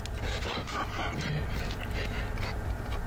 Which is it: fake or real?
real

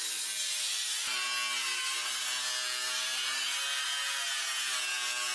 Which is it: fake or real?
real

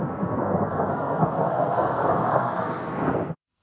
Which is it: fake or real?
fake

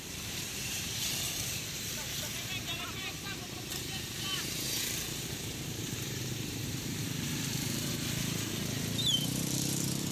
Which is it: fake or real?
fake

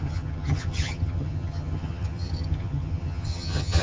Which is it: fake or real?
fake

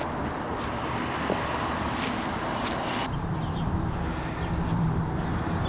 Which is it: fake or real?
real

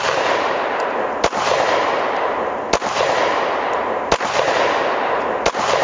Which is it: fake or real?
real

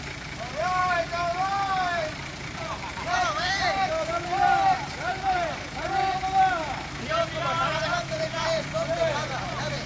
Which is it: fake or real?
fake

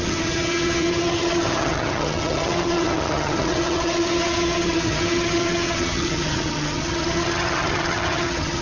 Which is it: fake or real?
fake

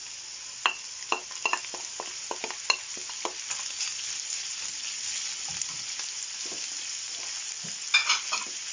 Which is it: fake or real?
real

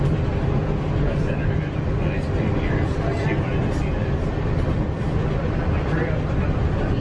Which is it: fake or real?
real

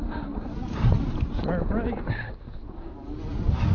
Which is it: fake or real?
real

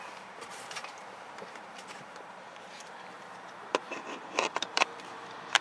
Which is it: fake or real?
fake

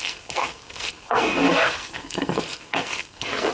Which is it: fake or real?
fake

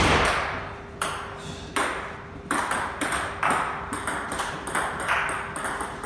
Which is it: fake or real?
real